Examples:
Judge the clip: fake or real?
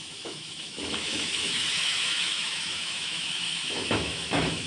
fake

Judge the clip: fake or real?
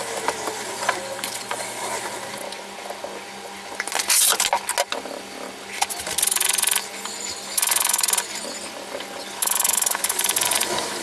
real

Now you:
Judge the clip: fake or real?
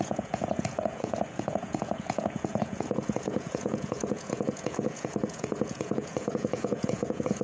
fake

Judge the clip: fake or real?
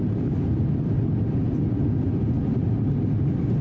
real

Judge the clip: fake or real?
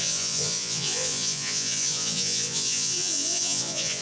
fake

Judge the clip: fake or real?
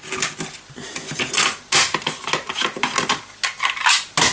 real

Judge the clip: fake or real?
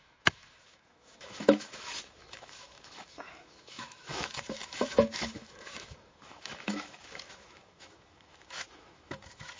fake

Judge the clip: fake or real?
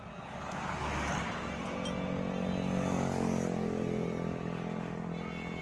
real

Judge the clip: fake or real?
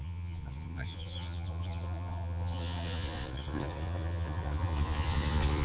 fake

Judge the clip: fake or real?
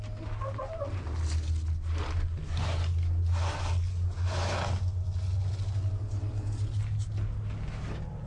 real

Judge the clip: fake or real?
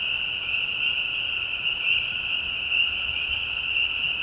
real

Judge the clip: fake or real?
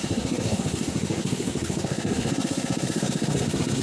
fake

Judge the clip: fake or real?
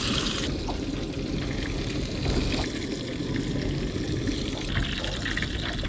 real